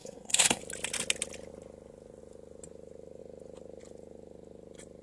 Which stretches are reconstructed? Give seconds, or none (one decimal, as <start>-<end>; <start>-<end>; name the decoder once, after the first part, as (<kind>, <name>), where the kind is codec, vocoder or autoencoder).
0.0-0.6 (codec, SNAC)